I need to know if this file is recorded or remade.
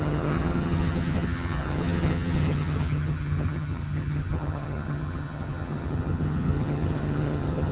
remade